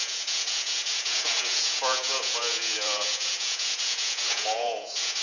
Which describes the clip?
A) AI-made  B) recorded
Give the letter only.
A